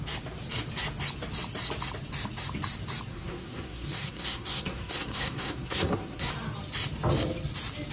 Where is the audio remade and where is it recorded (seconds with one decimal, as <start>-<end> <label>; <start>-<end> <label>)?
0.0-3.1 recorded; 3.1-6.3 remade; 6.3-7.9 recorded